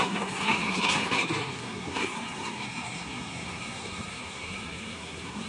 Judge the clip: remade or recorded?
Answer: remade